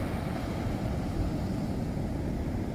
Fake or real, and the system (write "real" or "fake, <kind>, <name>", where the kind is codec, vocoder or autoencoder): real